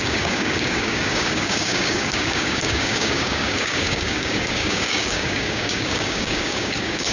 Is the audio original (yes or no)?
no